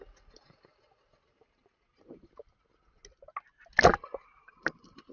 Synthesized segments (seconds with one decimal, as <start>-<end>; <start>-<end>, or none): none